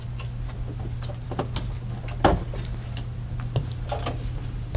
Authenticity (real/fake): real